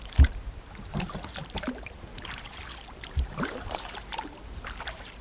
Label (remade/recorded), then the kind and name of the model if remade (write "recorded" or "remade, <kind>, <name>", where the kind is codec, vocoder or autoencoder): remade, vocoder, BigVGAN v2